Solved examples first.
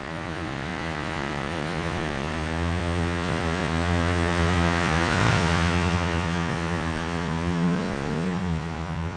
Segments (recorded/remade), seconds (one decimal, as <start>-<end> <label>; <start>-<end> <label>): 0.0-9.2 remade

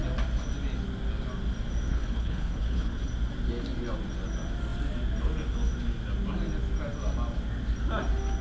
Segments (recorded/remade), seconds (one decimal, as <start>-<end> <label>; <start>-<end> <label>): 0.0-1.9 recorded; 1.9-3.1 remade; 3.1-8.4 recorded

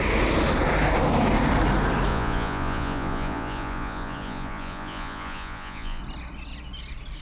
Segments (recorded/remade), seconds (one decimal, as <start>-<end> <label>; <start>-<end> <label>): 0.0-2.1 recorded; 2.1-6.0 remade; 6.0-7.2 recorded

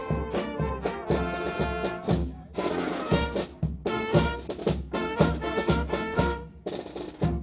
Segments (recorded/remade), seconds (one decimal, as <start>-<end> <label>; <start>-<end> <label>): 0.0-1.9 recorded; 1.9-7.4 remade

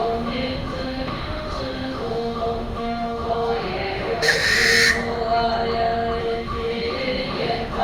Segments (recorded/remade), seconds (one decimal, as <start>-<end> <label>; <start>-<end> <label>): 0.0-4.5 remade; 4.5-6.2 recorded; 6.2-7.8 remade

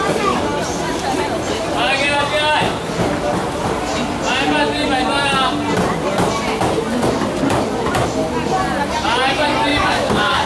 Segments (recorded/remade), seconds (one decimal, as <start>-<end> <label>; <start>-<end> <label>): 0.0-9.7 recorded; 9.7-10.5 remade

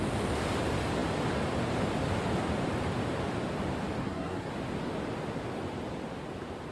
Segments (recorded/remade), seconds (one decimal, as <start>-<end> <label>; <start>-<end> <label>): 0.0-4.0 recorded; 4.0-4.5 remade; 4.5-6.7 recorded